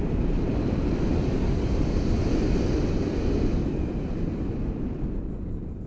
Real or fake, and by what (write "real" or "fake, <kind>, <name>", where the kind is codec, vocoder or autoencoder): real